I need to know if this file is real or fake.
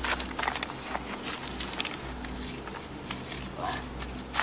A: real